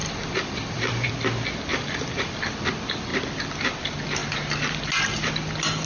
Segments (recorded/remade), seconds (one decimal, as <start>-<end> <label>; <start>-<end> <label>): 0.0-1.1 remade; 1.1-1.7 recorded; 1.7-2.4 remade; 2.4-5.9 recorded